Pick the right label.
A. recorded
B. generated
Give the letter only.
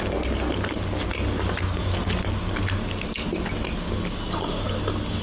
A